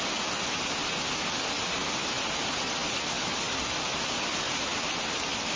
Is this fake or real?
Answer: real